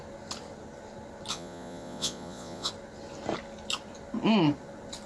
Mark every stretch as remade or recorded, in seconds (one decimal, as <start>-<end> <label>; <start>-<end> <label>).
0.0-1.3 recorded; 1.3-2.7 remade; 2.7-5.1 recorded